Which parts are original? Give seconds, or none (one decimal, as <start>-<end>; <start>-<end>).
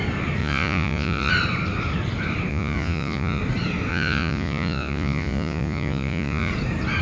0.0-0.4; 1.3-2.5; 3.4-3.9; 6.5-7.0